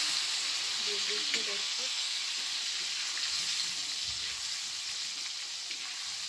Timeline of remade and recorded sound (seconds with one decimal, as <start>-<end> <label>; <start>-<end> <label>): 0.0-1.6 recorded; 1.6-2.2 remade; 2.2-6.3 recorded